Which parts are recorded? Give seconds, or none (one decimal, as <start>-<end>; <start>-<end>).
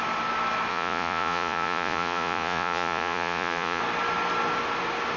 0.0-0.7; 3.8-5.2